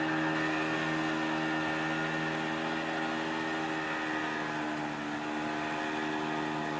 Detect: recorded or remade recorded